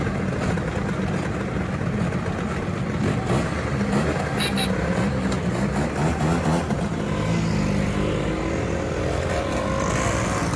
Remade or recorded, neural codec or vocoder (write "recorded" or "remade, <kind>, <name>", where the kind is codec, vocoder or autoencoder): recorded